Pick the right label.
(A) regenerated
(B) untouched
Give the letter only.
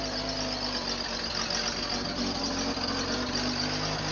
B